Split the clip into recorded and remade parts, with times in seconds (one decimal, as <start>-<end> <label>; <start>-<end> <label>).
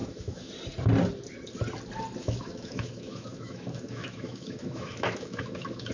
0.0-0.5 remade; 0.5-2.2 recorded; 2.2-5.9 remade